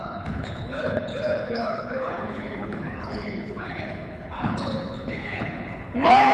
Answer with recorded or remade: remade